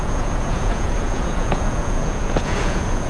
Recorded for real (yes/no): no